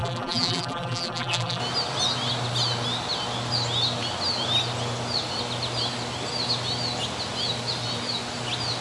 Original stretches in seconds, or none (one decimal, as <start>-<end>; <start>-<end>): 1.6-8.8